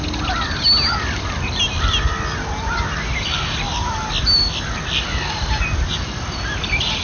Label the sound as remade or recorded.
recorded